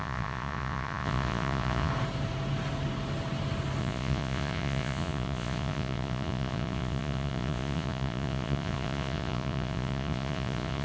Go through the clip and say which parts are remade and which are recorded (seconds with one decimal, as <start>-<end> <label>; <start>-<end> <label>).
0.0-1.9 remade; 1.9-3.8 recorded; 3.8-10.8 remade